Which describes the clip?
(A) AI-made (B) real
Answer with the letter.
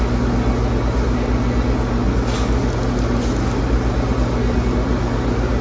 B